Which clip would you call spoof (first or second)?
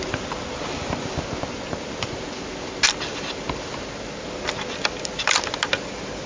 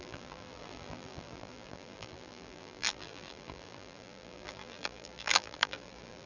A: second